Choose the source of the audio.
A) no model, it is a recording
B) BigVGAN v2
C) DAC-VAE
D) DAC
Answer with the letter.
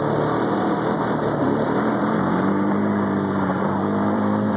B